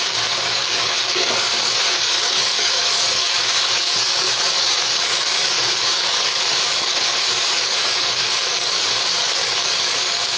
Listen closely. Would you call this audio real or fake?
fake